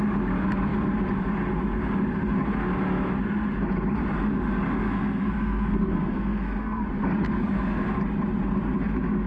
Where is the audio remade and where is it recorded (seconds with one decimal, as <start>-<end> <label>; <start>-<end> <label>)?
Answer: 0.0-4.8 recorded; 4.8-6.8 remade; 6.8-9.3 recorded